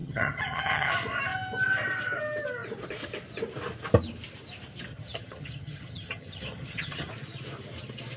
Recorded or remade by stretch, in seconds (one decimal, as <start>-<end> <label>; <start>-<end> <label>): 0.0-0.9 remade; 0.9-4.9 recorded; 4.9-7.1 remade; 7.1-8.2 recorded